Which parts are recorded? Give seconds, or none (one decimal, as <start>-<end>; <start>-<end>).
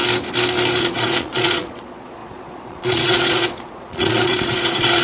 0.0-0.8